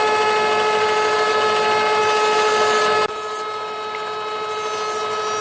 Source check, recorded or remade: recorded